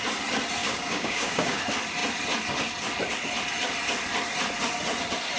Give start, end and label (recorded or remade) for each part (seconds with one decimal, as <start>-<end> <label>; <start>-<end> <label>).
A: 0.0-0.6 recorded; 0.6-1.6 remade; 1.6-5.4 recorded